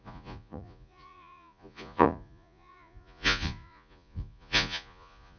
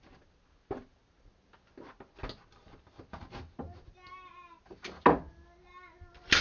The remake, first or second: first